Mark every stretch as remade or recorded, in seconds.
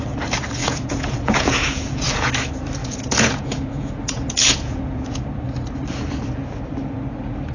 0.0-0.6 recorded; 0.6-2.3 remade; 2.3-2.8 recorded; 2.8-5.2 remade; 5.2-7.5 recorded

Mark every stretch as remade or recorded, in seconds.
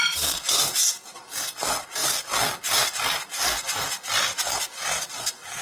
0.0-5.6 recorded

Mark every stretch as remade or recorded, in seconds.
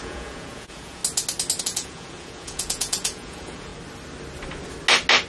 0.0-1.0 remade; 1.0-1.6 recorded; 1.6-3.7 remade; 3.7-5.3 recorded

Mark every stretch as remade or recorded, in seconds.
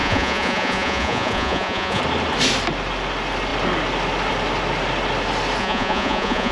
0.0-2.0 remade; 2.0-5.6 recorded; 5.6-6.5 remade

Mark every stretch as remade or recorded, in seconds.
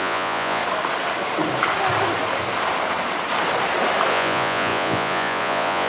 0.0-0.6 remade; 0.6-4.1 recorded; 4.1-5.9 remade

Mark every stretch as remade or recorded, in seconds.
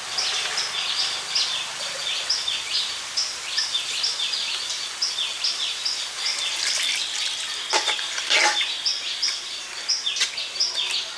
0.0-11.2 recorded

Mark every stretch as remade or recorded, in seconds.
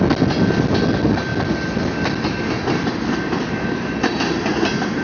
0.0-5.0 recorded